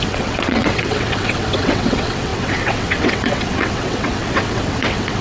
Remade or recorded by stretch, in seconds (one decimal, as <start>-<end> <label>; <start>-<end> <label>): 0.0-5.2 remade